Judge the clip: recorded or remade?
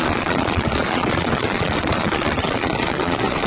remade